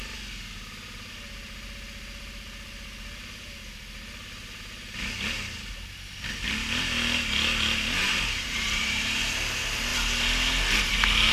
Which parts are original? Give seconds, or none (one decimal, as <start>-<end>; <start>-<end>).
0.0-8.0; 9.2-11.3